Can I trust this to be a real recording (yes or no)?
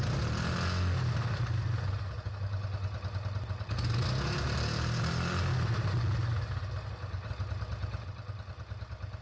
yes